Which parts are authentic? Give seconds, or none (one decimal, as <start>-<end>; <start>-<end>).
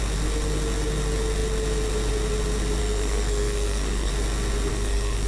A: 0.0-2.8; 4.1-4.7